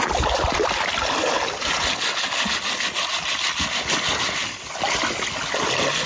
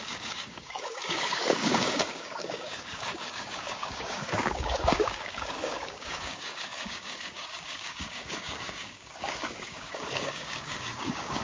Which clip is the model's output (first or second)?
second